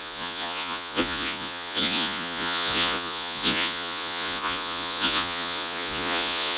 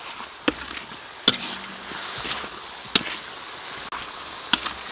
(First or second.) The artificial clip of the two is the first